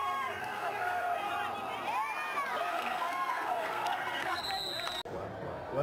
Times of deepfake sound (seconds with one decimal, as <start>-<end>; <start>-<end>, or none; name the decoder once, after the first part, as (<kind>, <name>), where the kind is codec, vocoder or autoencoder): 0.0-1.3 (codec, SNAC); 2.7-4.4